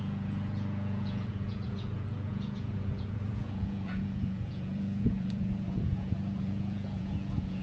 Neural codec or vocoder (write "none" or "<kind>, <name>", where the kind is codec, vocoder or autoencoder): vocoder, Vocos